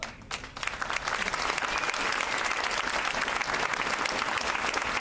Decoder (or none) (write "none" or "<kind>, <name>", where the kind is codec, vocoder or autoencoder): none